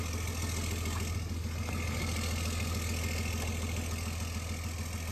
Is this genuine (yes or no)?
yes